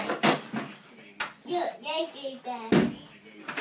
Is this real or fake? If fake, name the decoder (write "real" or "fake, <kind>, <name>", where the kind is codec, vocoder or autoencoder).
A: real